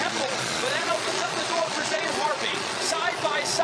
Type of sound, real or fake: fake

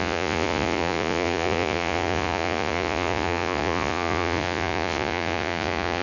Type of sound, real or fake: fake